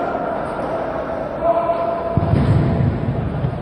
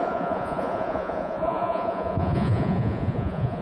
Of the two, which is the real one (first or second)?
first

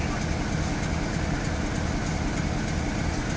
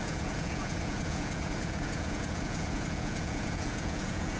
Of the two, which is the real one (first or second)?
first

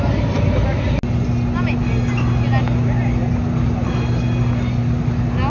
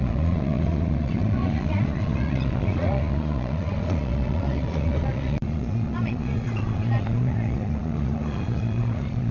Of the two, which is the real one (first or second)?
first